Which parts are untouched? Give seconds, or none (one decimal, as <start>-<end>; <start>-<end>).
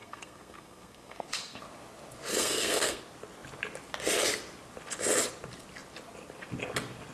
1.6-2.3; 3.0-7.1